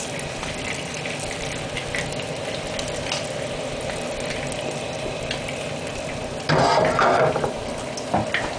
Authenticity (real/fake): real